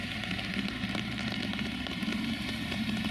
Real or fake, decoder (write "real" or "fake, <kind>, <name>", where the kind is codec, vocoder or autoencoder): fake, vocoder, BigVGAN v2